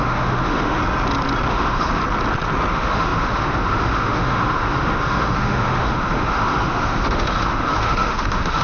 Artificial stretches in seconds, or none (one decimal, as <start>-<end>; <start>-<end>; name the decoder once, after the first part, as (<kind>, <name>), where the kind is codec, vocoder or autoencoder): 0.0-0.8 (autoencoder, DAC-VAE); 1.5-2.0; 2.7-8.6